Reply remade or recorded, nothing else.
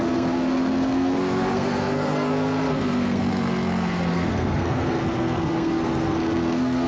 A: remade